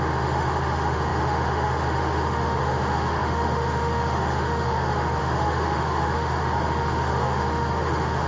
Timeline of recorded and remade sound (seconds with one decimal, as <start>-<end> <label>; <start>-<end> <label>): 0.0-8.3 remade